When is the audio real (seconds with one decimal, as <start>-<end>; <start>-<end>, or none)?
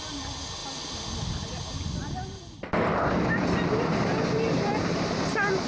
0.6-1.2